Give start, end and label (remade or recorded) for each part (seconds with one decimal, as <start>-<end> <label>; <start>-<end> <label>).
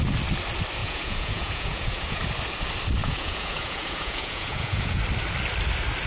0.0-0.8 recorded; 0.8-2.2 remade; 2.2-3.0 recorded; 3.0-5.0 remade; 5.0-6.1 recorded